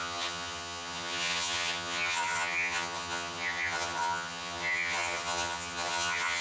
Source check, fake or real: fake